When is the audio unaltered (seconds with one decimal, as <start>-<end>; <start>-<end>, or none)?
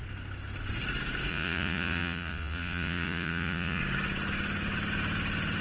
0.0-1.3; 3.8-5.6